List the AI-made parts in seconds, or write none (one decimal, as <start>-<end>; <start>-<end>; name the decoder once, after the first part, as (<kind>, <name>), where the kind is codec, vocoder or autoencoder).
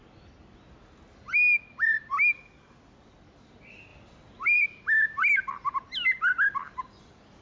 none